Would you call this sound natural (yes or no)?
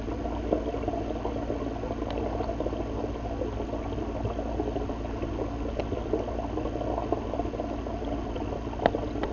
yes